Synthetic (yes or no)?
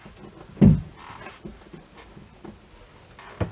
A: no